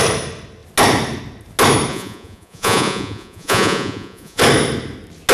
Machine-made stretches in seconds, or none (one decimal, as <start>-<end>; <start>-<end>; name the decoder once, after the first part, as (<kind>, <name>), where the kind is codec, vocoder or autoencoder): 1.9-4.4 (vocoder, Vocos)